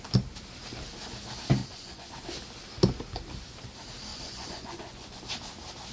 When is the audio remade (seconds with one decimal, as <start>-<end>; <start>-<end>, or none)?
1.6-2.1; 4.1-5.2